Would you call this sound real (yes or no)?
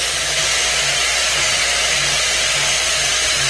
yes